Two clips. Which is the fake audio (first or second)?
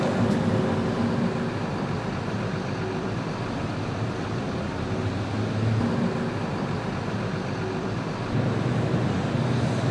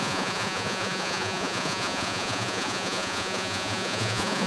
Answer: second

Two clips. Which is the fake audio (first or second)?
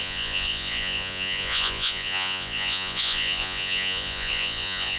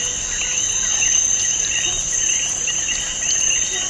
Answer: first